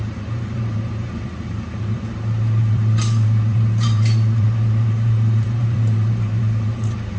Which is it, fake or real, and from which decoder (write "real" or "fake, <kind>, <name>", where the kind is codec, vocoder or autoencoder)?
fake, vocoder, BigVGAN v2